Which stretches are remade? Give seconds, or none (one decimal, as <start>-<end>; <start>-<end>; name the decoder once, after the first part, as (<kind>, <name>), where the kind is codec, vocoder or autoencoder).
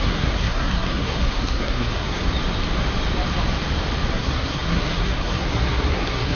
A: 0.0-2.2 (codec, SNAC); 4.1-6.3